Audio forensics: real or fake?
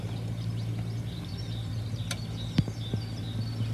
real